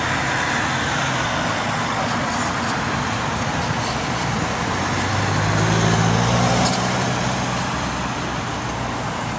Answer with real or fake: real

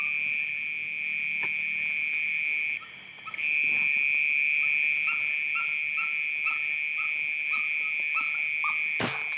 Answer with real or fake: real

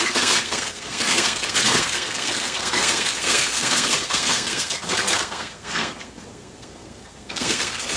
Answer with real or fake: fake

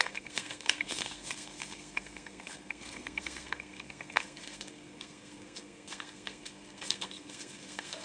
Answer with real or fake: fake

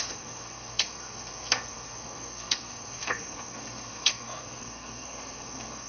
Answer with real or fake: fake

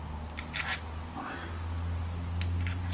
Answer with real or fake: real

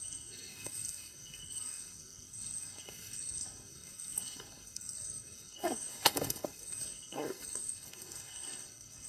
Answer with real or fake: fake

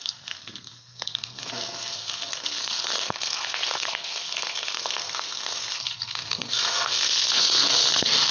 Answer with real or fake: fake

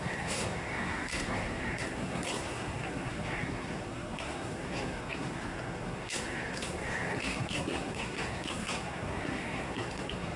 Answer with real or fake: fake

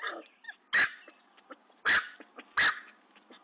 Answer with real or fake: real